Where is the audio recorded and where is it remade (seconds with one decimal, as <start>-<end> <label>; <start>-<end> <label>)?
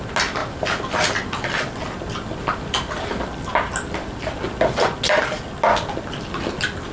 0.0-6.9 recorded